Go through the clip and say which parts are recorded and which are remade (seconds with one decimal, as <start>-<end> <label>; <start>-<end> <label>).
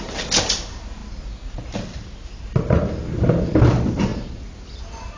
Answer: 0.0-4.1 recorded; 4.1-4.8 remade; 4.8-5.2 recorded